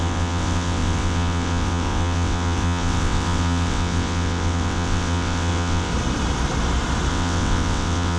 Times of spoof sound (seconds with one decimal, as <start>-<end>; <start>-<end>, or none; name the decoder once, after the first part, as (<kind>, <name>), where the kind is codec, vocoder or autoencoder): 0.0-5.9 (vocoder, WaveNeXt); 7.1-8.2

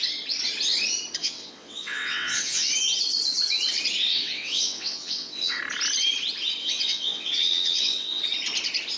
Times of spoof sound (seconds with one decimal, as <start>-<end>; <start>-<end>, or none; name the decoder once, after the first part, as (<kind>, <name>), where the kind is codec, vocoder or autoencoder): 1.2-2.7 (vocoder, WaveNeXt); 4.1-5.6; 6.6-8.2

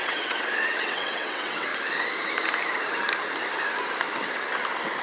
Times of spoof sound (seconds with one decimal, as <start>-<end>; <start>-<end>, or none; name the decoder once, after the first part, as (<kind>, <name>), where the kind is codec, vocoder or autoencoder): 0.0-1.7 (vocoder, WaveNeXt)

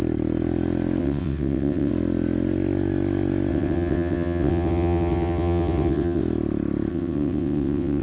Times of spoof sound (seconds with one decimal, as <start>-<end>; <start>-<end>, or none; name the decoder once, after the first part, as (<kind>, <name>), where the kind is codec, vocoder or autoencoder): 1.0-1.9 (vocoder, WaveNeXt); 3.5-6.2; 6.9-8.0

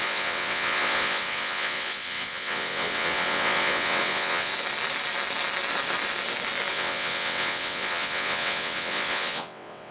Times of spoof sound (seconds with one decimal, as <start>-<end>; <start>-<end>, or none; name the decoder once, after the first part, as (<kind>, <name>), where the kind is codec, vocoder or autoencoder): 0.0-4.5 (vocoder, WaveNeXt); 6.7-9.9

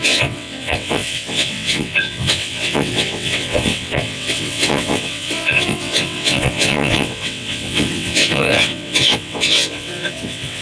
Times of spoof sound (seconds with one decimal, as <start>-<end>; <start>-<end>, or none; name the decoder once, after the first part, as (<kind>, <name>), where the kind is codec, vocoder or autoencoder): 0.0-10.6 (vocoder, WaveNeXt)